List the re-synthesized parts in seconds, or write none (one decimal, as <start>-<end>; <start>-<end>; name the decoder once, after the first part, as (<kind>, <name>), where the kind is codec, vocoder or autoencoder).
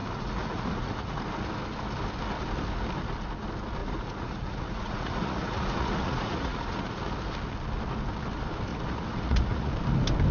0.0-1.2 (vocoder, Vocos); 3.8-7.0; 8.7-9.7